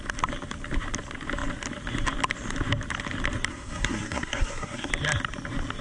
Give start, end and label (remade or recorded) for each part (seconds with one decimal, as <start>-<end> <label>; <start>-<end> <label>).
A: 0.0-3.5 recorded; 3.5-4.9 remade; 4.9-5.8 recorded